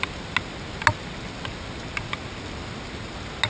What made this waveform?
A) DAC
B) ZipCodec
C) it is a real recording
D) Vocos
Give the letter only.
C